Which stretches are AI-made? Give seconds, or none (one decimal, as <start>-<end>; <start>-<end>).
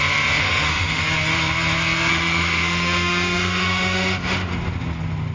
0.4-1.0; 2.1-4.5